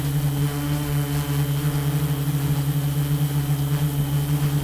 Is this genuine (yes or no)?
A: yes